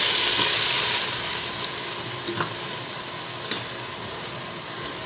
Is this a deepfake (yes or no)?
no